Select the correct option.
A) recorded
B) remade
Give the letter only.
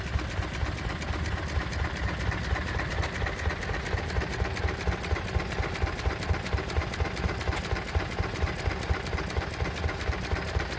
A